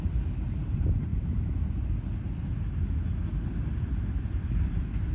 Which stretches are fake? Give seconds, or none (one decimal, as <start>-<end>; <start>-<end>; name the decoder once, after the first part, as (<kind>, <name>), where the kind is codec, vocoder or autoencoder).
0.0-1.1 (vocoder, BigVGAN v2); 4.2-5.1